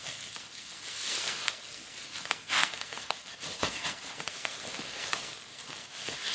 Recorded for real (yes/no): no